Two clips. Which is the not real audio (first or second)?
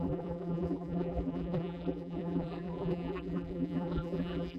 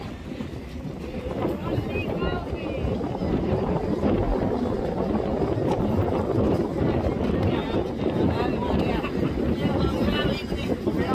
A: first